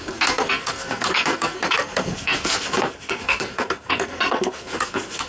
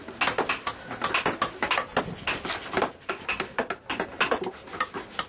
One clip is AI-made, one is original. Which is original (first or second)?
second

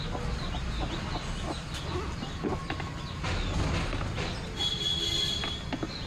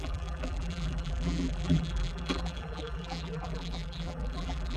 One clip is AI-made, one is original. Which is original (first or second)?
first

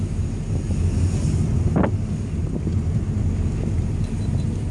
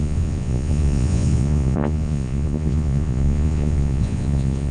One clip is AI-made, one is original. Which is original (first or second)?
first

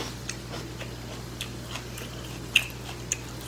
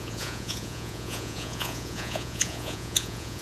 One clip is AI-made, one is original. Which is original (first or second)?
first